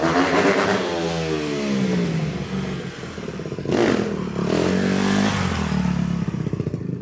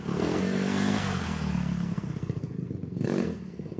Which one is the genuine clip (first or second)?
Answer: first